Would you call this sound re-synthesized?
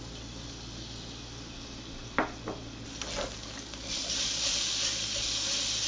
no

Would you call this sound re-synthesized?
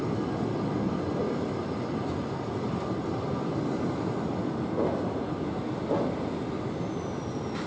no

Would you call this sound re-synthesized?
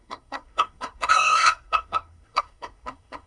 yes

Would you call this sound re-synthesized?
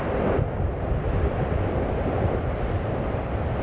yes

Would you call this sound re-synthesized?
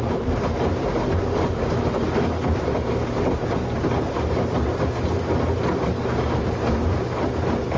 no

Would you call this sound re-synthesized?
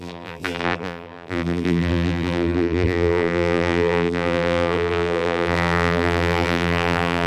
yes